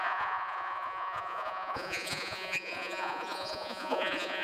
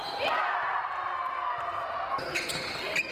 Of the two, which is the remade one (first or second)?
first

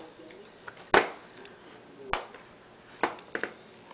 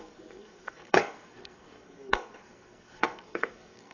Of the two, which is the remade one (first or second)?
second